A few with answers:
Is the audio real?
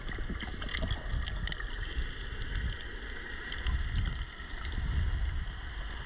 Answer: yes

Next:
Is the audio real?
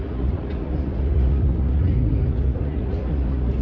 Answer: no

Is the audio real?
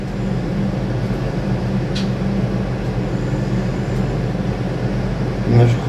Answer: yes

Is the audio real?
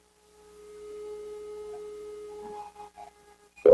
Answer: yes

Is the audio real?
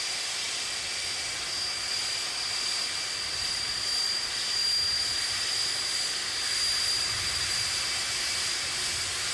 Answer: yes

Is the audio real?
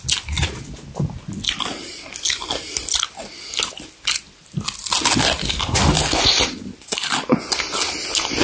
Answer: yes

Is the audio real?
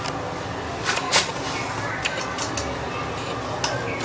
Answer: yes